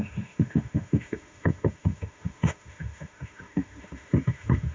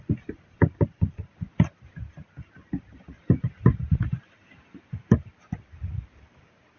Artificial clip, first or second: first